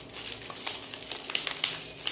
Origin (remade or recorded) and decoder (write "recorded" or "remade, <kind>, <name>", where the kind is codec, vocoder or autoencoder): recorded